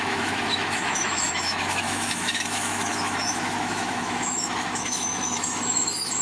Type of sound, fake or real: fake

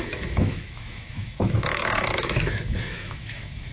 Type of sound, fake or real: fake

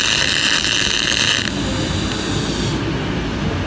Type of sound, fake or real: real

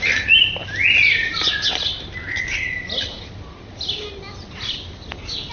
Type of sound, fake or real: real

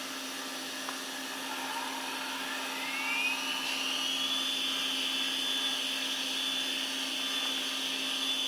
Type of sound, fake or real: real